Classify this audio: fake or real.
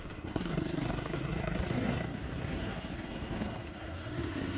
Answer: fake